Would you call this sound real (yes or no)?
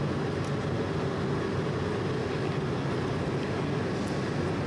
yes